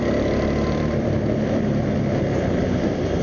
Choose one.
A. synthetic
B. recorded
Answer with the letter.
A